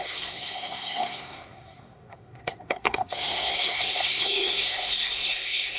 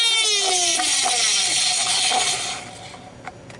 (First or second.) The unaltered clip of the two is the second